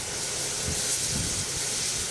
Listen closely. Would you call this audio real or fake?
real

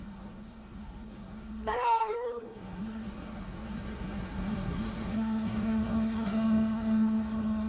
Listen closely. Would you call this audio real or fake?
fake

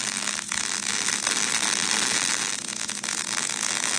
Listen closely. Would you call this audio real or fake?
real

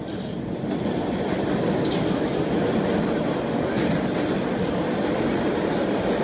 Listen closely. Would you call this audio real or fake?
real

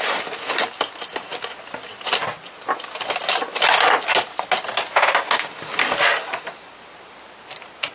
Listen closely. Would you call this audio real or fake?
real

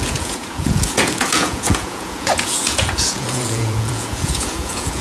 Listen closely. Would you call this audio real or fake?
fake